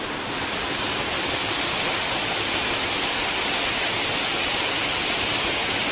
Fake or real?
real